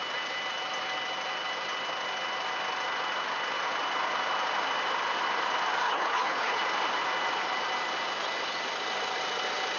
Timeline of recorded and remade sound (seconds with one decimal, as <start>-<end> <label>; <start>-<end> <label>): 0.0-5.8 recorded; 5.8-6.6 remade; 6.6-9.8 recorded